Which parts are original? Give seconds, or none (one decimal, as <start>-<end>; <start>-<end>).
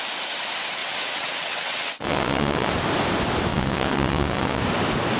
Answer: 0.0-0.8; 2.7-3.5; 4.6-5.2